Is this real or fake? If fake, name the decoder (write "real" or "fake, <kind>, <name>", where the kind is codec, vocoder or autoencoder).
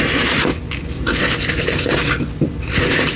real